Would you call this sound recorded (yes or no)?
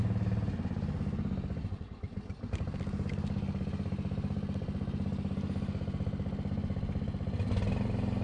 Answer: yes